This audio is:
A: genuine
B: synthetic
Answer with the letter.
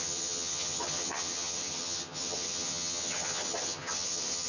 B